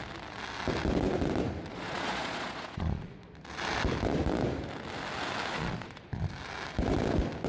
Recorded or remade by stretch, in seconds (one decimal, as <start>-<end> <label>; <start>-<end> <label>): 0.0-1.7 recorded; 1.7-3.3 remade; 3.3-5.5 recorded; 5.5-6.3 remade; 6.3-7.5 recorded